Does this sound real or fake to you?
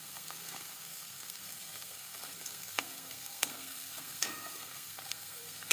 fake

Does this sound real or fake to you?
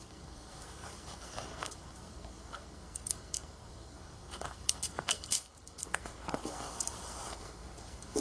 fake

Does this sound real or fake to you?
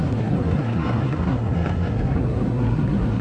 fake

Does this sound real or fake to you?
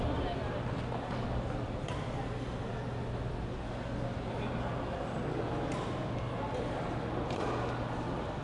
real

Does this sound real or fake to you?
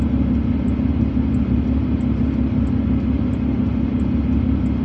real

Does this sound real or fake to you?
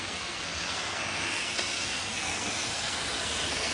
fake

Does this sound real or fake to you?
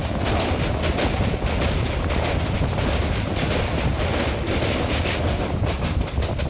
real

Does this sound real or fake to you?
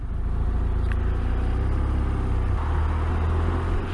real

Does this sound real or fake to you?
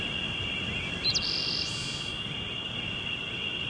real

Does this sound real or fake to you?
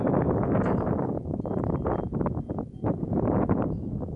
real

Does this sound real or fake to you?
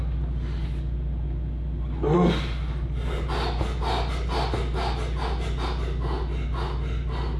real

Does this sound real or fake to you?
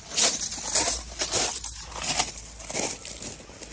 real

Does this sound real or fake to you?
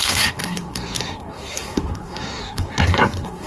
fake